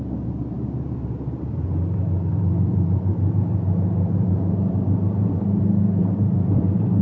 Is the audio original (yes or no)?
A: no